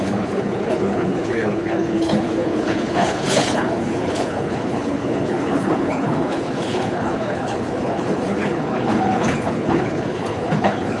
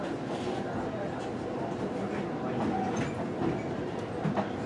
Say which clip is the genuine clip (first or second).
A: second